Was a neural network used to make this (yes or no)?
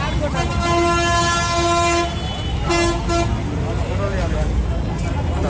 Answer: no